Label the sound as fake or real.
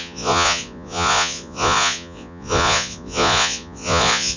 fake